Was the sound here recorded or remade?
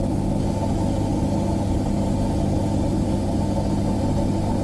recorded